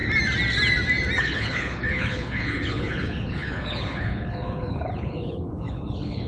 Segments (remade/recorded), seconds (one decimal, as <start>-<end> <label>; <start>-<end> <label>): 0.0-1.2 recorded; 1.2-6.3 remade